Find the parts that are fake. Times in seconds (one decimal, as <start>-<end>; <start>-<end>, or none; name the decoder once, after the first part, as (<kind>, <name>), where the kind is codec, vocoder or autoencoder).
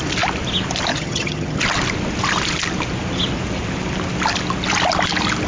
0.9-1.6 (vocoder, HiFi-GAN)